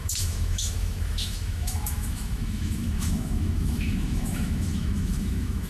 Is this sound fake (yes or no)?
yes